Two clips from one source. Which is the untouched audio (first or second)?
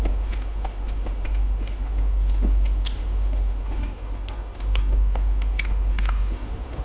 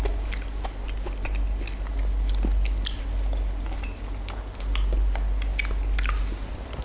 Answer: second